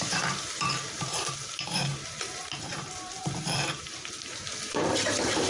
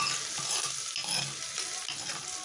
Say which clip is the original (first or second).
second